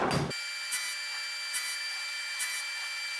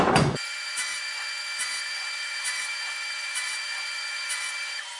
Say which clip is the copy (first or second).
second